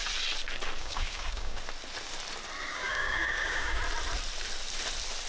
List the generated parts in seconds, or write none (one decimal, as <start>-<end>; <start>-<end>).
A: 0.8-1.6; 2.7-3.8